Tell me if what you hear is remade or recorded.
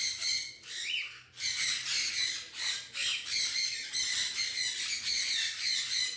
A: recorded